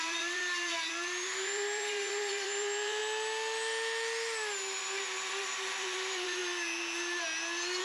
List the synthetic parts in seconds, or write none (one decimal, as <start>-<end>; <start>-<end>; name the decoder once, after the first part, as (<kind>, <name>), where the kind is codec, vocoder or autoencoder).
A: 0.0-3.0 (vocoder, BigVGAN v2); 4.8-6.4